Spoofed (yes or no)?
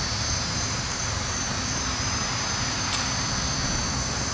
no